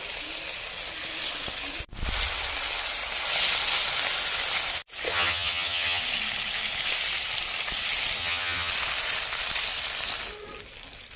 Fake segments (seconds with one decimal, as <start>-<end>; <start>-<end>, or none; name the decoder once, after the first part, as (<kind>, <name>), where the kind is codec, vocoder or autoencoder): 5.1-6.0 (vocoder, HiFi-GAN); 8.2-8.7